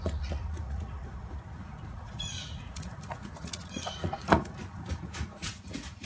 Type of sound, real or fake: fake